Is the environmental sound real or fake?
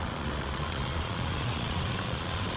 fake